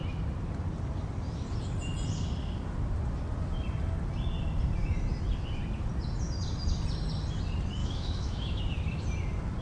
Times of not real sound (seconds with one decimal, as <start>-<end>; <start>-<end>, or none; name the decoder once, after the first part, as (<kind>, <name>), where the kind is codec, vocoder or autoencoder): 7.8-8.6 (autoencoder, DAC-VAE)